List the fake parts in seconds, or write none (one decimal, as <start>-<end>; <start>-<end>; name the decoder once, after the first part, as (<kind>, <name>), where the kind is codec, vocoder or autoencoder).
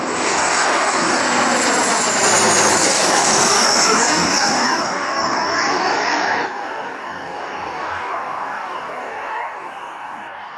0.0-1.2 (codec, DAC); 2.7-10.6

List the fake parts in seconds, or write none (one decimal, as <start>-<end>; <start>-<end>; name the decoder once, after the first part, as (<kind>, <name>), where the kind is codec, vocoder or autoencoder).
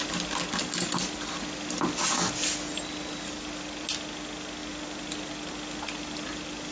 none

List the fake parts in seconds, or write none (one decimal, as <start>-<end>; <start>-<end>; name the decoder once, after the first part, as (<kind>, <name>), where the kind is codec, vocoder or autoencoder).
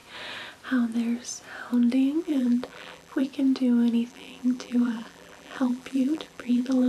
2.2-3.3 (vocoder, BigVGAN v2); 4.1-6.9